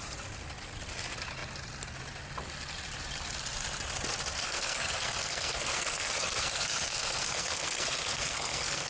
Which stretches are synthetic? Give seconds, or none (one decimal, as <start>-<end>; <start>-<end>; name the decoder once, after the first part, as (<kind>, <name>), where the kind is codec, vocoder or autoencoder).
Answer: 4.4-8.9 (codec, SNAC)